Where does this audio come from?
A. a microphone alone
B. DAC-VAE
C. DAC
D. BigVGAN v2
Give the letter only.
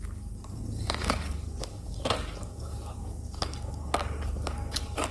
C